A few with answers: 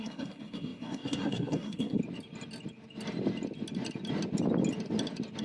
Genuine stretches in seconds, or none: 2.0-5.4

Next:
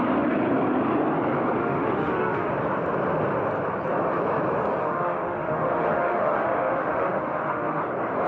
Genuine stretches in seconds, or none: 0.0-1.6; 2.5-4.8; 7.8-8.3

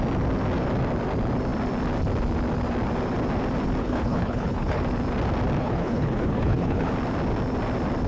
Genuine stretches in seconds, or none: 0.0-3.8; 4.8-5.6; 6.9-8.1

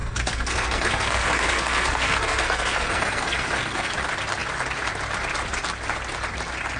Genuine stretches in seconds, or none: 3.9-6.8

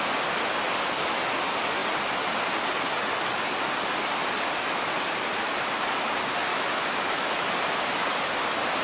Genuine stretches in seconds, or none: 0.0-6.5; 7.5-8.8

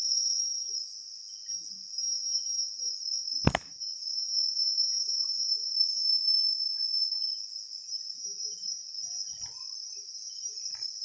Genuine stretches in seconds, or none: 0.7-11.0